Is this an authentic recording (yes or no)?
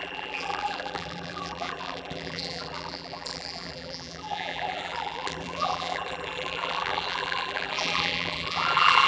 no